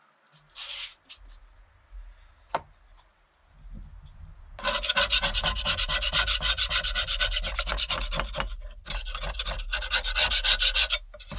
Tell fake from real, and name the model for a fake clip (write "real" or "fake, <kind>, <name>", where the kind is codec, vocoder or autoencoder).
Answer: real